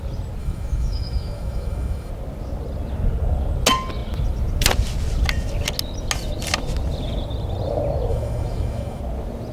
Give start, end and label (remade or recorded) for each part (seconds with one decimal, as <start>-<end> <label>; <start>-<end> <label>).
0.0-0.4 recorded; 0.4-2.1 remade; 2.1-8.1 recorded; 8.1-9.0 remade; 9.0-9.5 recorded